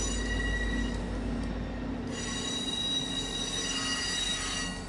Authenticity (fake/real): real